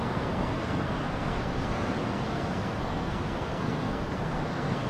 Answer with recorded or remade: remade